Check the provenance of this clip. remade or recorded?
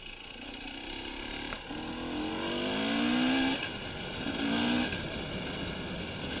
recorded